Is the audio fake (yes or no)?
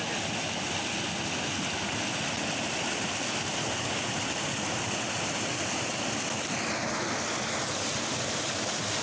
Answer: no